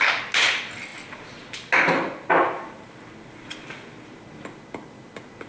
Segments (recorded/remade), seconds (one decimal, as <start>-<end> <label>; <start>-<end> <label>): 0.0-5.5 recorded